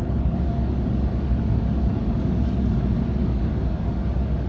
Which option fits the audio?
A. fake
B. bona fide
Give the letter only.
A